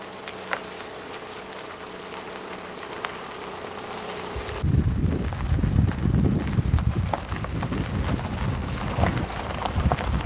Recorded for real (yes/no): yes